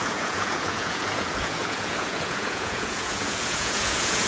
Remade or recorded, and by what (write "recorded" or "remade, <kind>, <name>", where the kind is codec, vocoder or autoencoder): remade, vocoder, Vocos